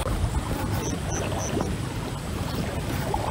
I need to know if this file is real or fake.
real